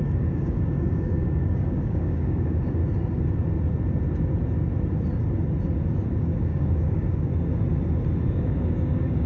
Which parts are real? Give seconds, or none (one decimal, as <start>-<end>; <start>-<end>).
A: 2.8-6.2; 7.3-8.3